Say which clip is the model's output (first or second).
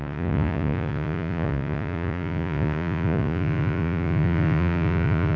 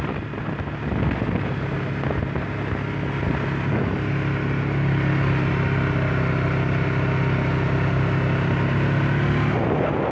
first